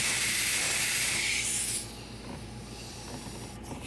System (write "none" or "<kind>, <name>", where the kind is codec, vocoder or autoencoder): none